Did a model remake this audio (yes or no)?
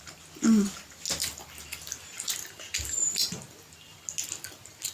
no